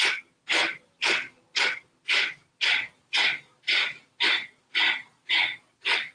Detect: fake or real real